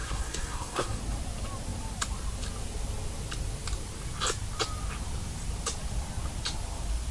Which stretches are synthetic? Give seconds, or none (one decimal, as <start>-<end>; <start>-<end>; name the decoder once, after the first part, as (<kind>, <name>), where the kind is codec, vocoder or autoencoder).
0.0-1.0 (codec, SNAC)

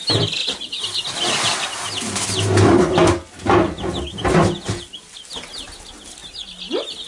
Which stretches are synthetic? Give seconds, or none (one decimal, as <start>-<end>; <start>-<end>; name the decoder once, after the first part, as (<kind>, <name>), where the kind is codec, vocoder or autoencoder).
none

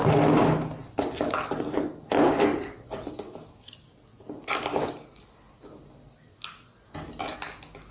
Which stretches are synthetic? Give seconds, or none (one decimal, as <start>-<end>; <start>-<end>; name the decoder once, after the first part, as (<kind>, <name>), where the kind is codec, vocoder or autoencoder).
0.8-2.1 (vocoder, BigVGAN v2); 2.5-3.1

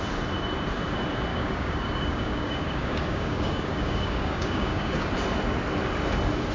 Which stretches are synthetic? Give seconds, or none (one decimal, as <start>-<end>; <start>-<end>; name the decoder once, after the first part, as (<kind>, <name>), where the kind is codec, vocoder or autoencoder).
1.3-5.1 (codec, DAC)

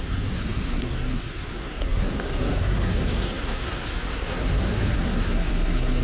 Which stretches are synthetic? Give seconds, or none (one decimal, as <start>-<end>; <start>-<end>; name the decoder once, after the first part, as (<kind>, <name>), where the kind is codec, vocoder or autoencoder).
0.0-6.0 (codec, SNAC)

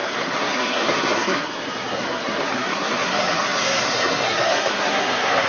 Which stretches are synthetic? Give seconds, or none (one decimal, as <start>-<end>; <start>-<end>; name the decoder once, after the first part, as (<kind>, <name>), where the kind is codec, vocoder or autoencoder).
0.0-5.5 (codec, SNAC)

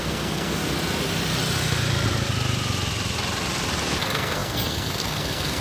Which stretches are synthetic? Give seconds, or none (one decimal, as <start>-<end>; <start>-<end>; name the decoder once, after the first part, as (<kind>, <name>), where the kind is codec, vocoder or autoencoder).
0.0-0.6 (codec, SNAC); 4.0-5.6

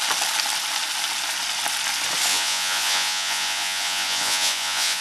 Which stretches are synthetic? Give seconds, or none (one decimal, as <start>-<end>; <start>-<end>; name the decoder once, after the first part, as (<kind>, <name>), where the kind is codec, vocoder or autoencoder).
2.3-5.0 (vocoder, Vocos)